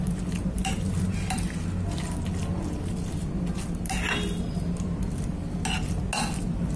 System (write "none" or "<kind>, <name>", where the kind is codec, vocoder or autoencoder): none